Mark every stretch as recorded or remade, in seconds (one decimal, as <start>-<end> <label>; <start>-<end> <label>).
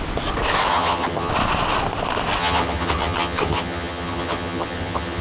0.0-0.7 recorded; 0.7-1.3 remade; 1.3-2.4 recorded; 2.4-5.2 remade